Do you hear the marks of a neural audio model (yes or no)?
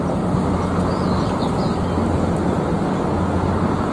no